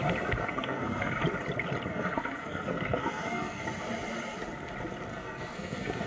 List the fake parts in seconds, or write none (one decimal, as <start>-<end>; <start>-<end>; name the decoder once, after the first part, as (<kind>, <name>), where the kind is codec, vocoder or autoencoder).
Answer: 0.4-1.2 (codec, SNAC); 1.9-3.6; 5.1-6.1